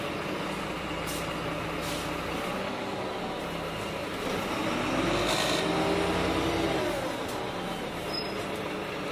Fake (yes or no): no